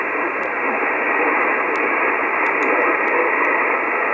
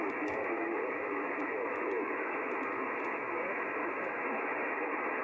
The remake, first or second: second